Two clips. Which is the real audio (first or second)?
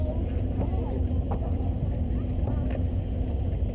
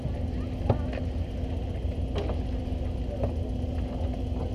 second